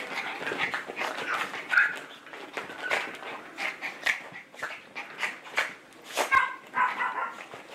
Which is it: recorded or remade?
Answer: remade